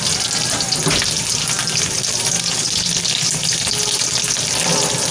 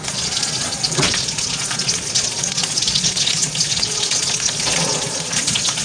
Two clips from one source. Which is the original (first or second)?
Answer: first